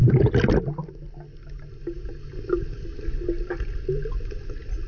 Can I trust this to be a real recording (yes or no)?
yes